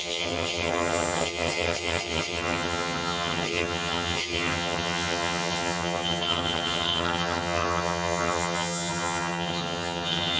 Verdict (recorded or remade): remade